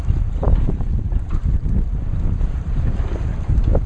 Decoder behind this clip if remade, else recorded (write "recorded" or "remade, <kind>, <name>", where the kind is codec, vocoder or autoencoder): remade, vocoder, BigVGAN v2